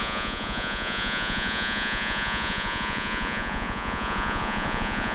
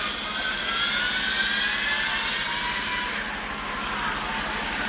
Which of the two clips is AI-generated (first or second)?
first